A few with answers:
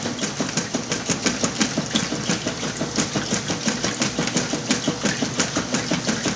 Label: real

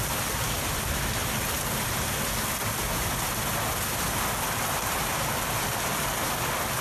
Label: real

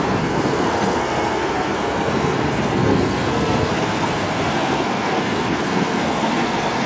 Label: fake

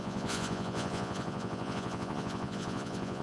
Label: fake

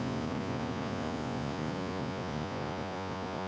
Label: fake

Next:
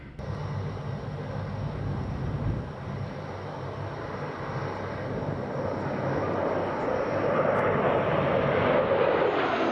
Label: real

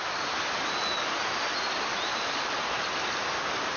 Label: real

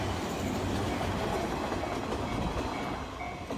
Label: real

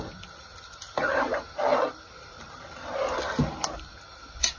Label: real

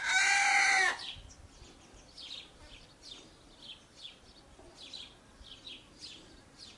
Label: real